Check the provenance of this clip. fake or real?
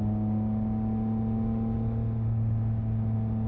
real